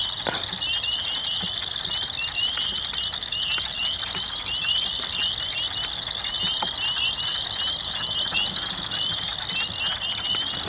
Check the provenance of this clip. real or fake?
real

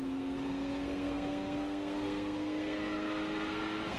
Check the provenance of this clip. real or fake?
fake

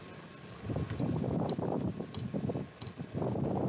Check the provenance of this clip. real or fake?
real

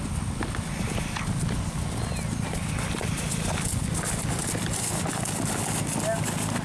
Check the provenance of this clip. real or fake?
real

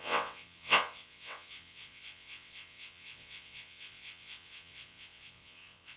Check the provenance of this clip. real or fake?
fake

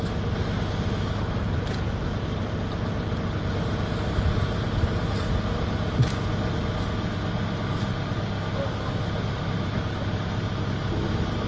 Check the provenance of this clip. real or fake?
real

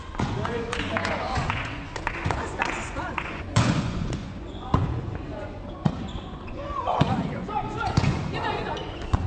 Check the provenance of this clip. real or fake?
fake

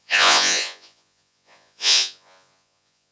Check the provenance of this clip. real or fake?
fake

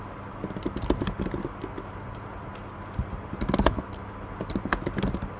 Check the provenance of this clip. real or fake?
real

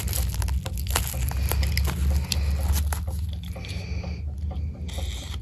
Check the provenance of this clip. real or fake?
real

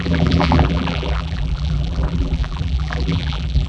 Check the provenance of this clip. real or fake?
fake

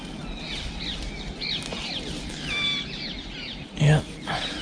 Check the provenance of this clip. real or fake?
real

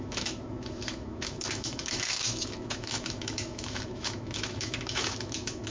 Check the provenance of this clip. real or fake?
fake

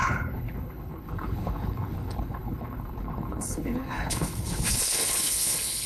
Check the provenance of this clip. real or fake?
fake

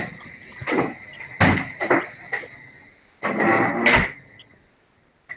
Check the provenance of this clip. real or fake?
real